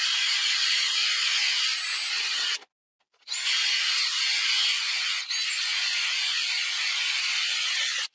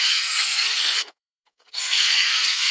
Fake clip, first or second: second